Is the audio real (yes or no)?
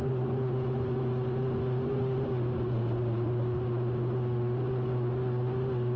yes